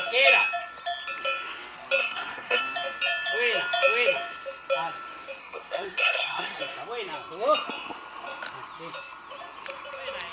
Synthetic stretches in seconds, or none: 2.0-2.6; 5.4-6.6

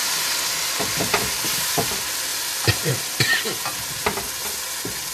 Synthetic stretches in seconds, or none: 0.0-4.4

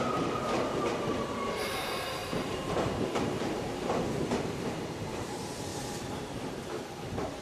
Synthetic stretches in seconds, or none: 0.0-5.7; 6.5-7.4

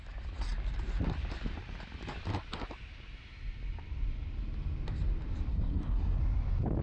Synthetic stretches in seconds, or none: 5.5-6.2

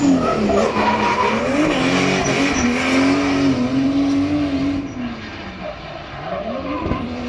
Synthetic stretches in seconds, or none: none

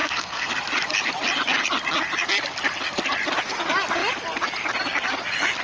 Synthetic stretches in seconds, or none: 0.0-0.5